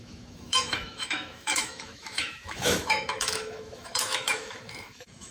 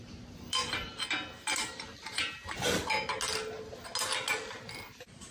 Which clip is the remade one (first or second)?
first